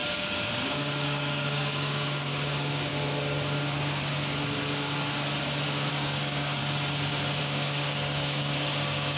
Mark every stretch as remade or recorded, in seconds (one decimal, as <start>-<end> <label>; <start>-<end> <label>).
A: 0.0-2.9 remade; 2.9-5.9 recorded; 5.9-6.6 remade; 6.6-7.4 recorded; 7.4-9.2 remade